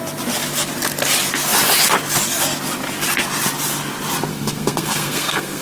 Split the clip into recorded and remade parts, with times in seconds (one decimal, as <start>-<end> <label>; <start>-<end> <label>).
0.0-4.3 recorded; 4.3-5.6 remade